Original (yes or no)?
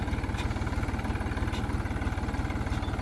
yes